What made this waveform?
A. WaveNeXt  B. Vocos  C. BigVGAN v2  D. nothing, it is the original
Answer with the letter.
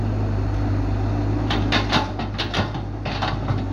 D